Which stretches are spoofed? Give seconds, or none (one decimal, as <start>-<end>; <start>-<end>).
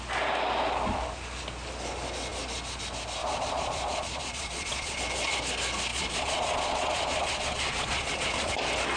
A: 3.2-5.0; 5.9-8.5